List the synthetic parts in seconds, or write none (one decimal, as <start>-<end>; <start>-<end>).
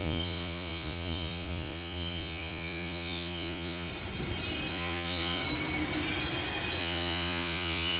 0.0-3.9; 4.7-5.4; 6.8-8.0